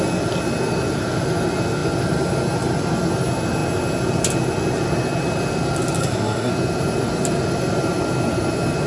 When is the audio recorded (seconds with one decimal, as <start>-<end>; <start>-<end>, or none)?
0.0-6.0; 6.5-8.9